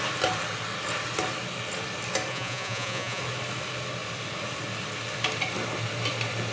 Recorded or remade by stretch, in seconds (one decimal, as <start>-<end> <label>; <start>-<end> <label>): 0.0-2.3 recorded; 2.3-3.2 remade; 3.2-6.5 recorded